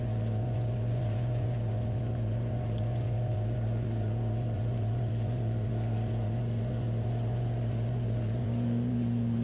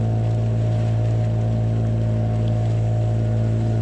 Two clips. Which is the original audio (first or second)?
second